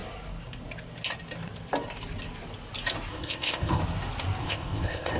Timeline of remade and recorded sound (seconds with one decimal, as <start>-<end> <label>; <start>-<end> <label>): 0.0-3.1 recorded; 3.1-3.8 remade; 3.8-4.4 recorded; 4.4-5.2 remade